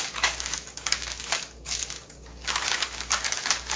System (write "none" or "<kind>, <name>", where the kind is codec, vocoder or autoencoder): codec, DAC